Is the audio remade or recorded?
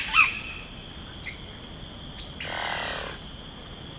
recorded